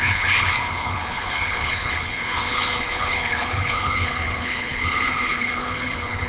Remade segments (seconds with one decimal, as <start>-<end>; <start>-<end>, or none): 0.0-6.3